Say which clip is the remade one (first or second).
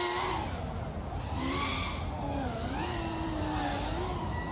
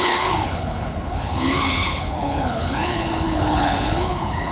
second